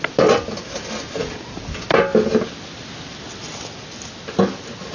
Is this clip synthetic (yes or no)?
no